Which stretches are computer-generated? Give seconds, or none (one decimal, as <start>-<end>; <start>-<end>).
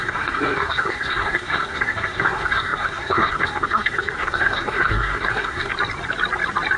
0.0-5.7